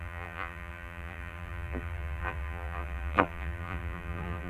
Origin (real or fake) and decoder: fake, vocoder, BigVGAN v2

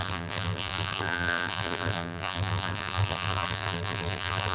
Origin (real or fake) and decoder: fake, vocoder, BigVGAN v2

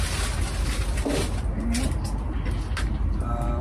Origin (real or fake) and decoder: real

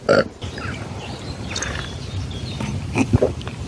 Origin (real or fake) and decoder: fake, vocoder, BigVGAN v2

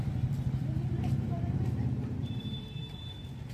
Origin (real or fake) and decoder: fake, vocoder, BigVGAN v2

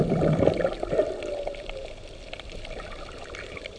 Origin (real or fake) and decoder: fake, vocoder, BigVGAN v2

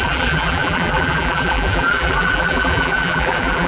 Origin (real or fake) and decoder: fake, vocoder, BigVGAN v2